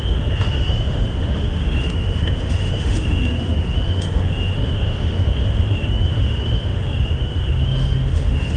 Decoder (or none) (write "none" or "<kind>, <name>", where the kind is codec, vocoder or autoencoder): autoencoder, DAC-VAE